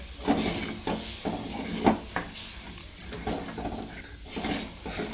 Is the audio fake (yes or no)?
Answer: no